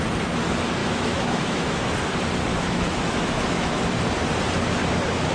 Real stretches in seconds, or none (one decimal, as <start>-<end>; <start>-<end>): 0.0-0.8; 1.9-2.5; 3.8-5.3